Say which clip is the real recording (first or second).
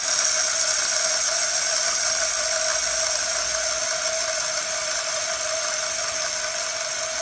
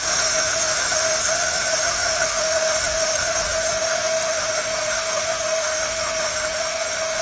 first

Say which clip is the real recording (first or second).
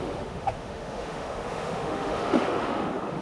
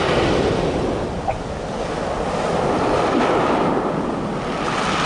second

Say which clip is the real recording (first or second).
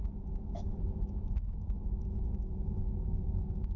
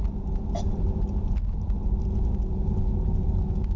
second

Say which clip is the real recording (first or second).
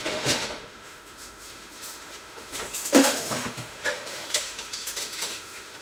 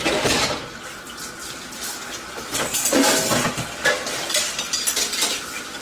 second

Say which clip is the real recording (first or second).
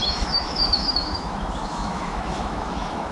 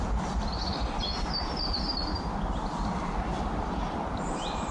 second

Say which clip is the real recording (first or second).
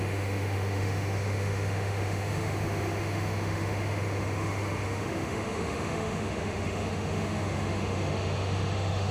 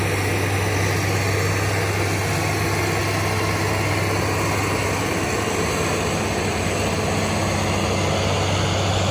second